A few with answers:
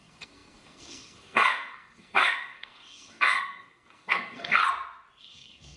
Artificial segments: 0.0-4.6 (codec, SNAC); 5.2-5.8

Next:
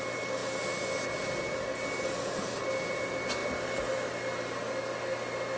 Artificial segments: none